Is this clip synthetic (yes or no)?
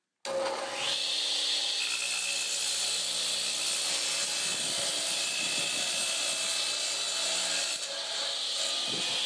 no